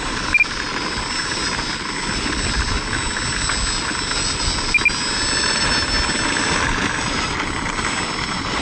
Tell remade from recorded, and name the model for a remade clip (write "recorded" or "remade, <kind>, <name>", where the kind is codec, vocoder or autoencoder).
recorded